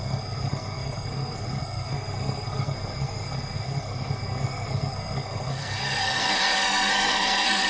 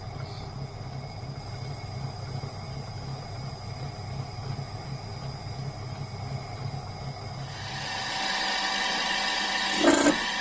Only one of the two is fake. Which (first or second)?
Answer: first